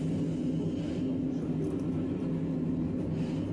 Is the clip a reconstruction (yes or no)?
no